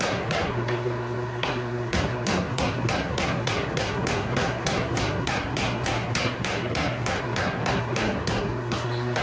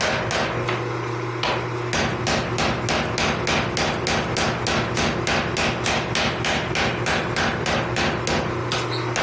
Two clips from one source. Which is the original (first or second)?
second